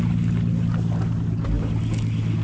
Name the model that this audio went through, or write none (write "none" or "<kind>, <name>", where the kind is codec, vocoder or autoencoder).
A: none